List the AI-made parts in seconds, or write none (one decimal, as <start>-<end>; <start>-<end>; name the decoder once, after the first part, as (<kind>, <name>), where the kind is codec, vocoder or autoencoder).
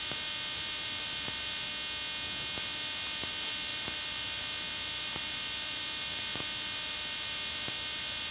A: 0.0-1.7 (vocoder, BigVGAN v2); 2.6-8.3